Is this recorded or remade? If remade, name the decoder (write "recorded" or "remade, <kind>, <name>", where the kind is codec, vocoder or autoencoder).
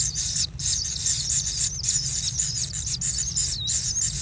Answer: recorded